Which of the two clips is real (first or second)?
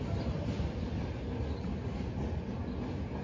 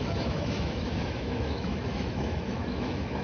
first